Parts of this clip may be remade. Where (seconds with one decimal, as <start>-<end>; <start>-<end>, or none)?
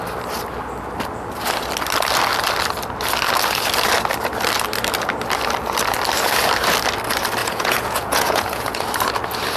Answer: 7.4-8.8